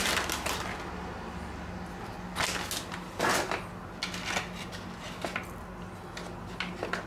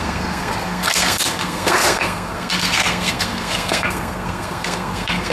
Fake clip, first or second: second